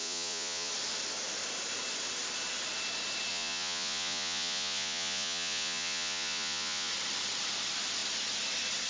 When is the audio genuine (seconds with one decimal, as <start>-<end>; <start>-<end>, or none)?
0.7-3.3; 6.9-8.9